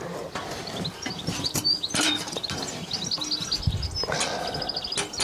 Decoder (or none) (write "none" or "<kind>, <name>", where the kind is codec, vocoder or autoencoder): none